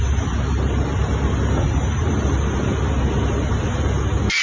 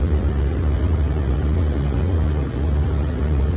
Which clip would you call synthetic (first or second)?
second